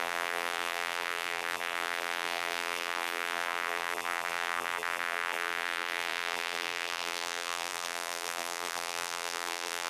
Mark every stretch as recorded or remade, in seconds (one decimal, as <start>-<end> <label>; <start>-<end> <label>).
0.0-9.9 remade